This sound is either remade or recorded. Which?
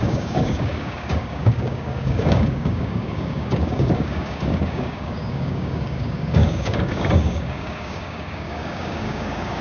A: remade